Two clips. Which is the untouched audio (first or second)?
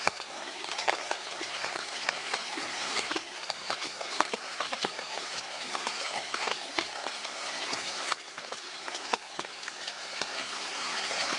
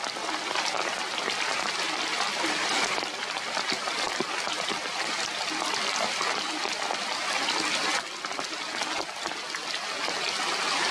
second